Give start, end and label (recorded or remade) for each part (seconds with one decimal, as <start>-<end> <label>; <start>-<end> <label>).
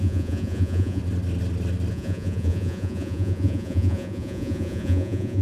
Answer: 0.0-1.0 remade; 1.0-1.9 recorded; 1.9-5.4 remade